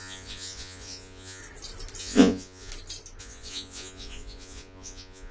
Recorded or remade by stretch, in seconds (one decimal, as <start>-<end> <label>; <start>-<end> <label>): 0.0-1.4 remade; 1.4-2.0 recorded; 2.0-2.7 remade; 2.7-3.2 recorded; 3.2-5.3 remade